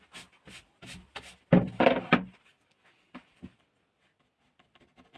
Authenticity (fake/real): real